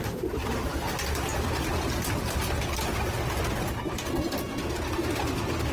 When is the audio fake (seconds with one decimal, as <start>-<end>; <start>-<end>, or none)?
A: none